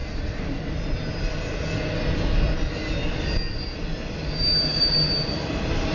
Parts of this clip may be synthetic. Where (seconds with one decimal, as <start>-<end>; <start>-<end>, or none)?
none